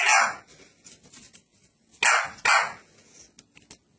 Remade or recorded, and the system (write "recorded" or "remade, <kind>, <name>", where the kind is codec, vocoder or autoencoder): recorded